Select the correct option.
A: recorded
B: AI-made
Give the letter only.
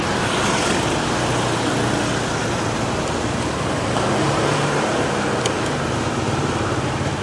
A